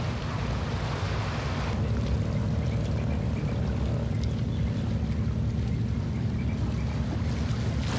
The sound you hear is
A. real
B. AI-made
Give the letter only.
A